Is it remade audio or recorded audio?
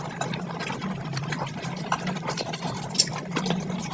recorded